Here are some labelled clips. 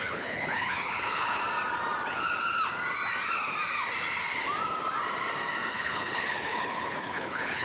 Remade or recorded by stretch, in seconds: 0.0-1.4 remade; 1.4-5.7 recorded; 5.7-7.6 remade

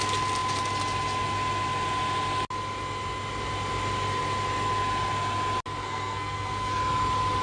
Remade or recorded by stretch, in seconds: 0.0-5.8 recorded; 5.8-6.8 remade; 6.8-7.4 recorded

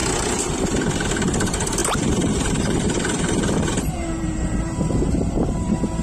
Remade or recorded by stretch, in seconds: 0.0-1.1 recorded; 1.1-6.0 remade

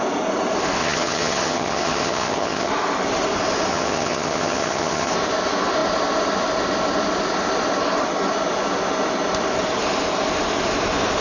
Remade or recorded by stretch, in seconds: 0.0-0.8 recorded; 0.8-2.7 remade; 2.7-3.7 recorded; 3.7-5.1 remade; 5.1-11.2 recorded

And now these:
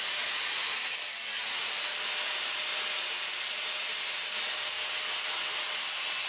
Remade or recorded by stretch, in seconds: 0.0-0.6 recorded; 0.6-1.6 remade; 1.6-6.3 recorded